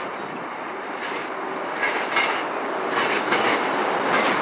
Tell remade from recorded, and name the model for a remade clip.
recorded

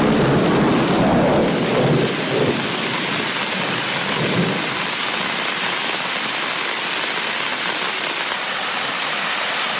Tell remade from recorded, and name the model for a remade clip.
recorded